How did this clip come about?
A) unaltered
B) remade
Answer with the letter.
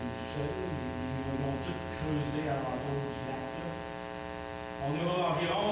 A